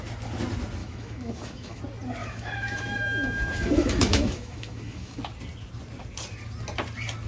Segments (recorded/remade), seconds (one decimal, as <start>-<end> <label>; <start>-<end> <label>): 0.0-0.8 recorded; 0.8-1.8 remade; 1.8-2.2 recorded; 2.2-5.2 remade; 5.2-7.3 recorded